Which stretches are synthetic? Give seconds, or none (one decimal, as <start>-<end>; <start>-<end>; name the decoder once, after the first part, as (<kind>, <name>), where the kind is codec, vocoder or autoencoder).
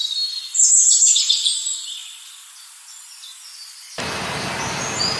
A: none